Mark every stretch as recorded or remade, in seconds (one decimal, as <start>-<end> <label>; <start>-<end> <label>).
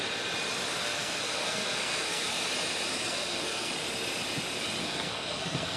0.0-0.8 recorded; 0.8-2.4 remade; 2.4-2.9 recorded; 2.9-3.7 remade; 3.7-4.8 recorded; 4.8-5.8 remade